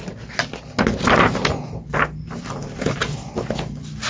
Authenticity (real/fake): real